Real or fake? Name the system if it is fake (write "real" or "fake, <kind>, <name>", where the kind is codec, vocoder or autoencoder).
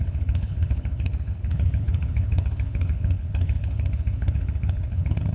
fake, codec, HILCodec